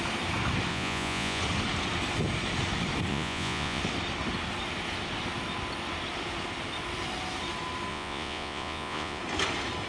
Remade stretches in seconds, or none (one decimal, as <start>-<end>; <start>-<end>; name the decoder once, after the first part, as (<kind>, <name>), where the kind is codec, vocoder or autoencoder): 0.7-1.4 (vocoder, Vocos); 3.1-3.8; 7.9-9.2